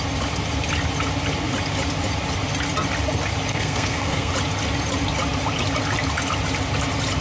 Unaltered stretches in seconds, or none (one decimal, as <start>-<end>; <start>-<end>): 0.0-3.5; 4.3-7.2

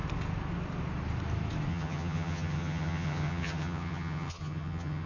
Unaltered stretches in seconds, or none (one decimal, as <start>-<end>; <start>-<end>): 0.0-1.7

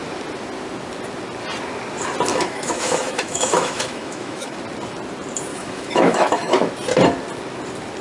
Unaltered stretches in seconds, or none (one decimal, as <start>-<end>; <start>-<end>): 0.0-2.3; 4.6-5.5; 6.7-8.0

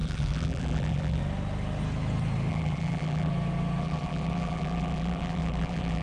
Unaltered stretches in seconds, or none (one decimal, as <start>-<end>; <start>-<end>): 1.2-2.5; 3.3-3.8

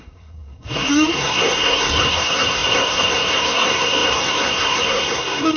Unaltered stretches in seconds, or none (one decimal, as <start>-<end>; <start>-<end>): none

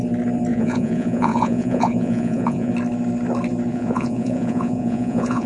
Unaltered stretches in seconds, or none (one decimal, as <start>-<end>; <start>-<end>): 0.0-0.5; 2.7-3.7

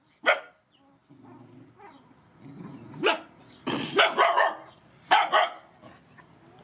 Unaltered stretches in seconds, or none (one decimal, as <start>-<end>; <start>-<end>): 0.0-6.6

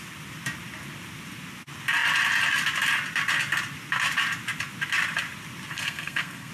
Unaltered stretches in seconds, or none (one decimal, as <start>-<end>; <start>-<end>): 0.0-5.7